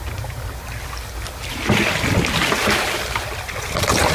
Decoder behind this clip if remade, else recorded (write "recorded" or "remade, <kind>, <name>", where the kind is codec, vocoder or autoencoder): recorded